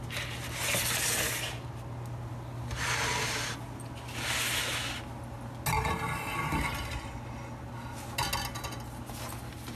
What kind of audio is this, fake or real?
real